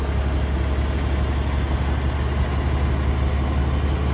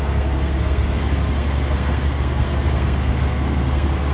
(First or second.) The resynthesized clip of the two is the second